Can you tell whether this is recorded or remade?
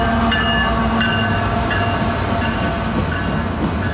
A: recorded